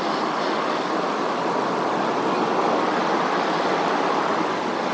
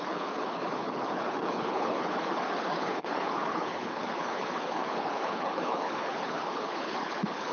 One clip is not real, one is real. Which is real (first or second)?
first